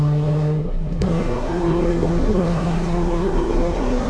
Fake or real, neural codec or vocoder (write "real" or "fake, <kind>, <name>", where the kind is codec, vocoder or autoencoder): fake, codec, SNAC